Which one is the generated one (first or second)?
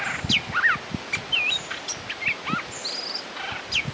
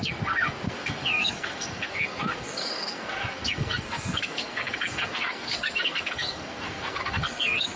second